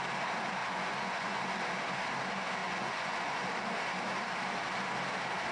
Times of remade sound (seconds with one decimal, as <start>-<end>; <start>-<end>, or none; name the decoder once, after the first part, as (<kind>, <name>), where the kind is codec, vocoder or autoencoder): 0.6-1.4 (vocoder, Vocos); 2.6-3.4